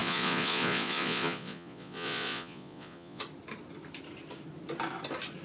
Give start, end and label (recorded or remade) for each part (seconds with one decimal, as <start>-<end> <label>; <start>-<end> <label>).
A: 0.0-3.2 remade; 3.2-5.4 recorded